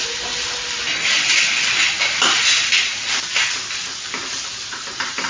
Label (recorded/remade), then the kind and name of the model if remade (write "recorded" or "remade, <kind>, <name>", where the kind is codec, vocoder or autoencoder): recorded